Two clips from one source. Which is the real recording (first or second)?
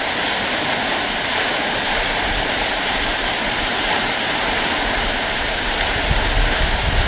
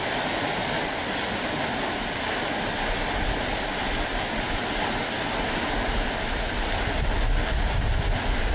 second